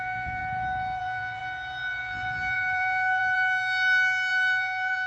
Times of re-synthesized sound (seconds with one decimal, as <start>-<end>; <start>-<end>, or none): 0.0-0.4; 1.0-1.4; 2.0-5.1